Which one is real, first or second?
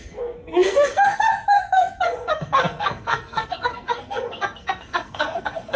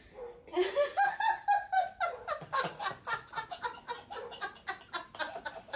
second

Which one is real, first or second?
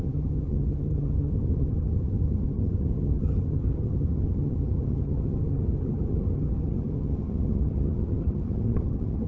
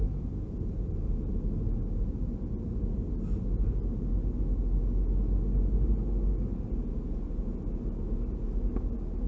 second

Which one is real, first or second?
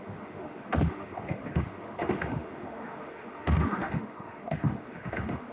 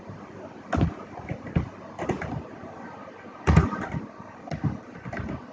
second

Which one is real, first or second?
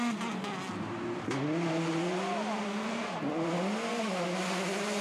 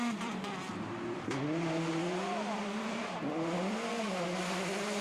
first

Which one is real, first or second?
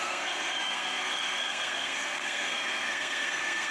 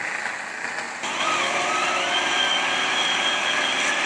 second